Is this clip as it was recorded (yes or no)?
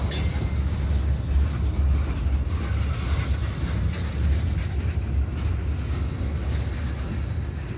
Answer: yes